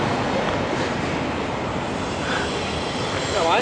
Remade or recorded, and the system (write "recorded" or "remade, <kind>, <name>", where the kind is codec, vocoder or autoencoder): recorded